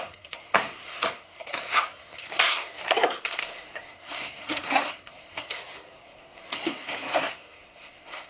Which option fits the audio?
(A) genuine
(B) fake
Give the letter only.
B